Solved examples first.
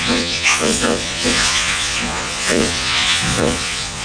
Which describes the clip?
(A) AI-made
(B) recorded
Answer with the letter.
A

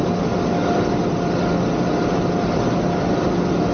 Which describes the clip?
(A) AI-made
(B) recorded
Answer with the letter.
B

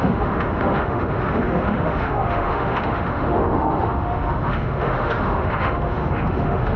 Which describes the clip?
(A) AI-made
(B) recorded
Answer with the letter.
A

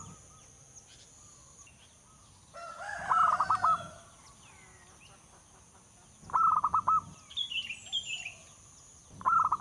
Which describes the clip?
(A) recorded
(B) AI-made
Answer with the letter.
A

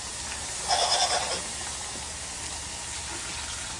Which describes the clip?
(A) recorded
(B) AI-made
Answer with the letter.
A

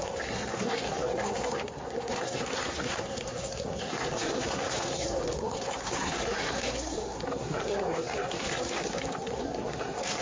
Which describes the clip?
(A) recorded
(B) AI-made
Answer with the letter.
B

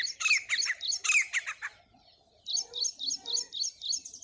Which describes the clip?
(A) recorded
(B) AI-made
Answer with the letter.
A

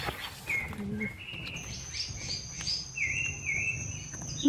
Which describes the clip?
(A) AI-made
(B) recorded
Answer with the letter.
B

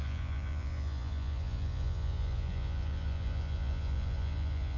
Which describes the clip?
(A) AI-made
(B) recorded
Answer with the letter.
A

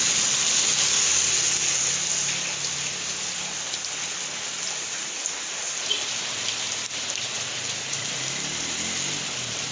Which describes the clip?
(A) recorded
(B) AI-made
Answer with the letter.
A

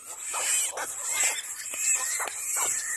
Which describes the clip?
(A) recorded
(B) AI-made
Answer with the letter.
A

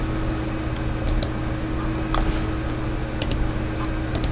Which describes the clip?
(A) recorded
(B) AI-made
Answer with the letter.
A